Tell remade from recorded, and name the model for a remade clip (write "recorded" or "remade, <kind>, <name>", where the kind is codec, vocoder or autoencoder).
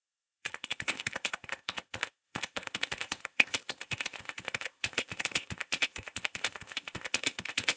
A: remade, codec, ZipCodec